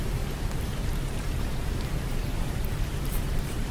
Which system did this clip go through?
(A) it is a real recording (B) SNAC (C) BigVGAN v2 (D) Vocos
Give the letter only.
C